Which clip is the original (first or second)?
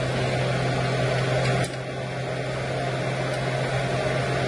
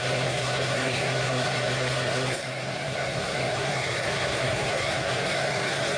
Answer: first